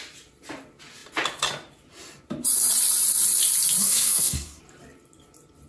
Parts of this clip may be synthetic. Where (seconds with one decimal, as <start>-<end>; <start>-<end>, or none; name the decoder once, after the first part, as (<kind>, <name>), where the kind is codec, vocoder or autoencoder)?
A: 3.8-4.6 (codec, SNAC)